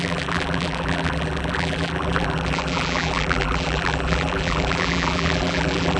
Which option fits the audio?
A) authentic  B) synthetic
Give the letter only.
B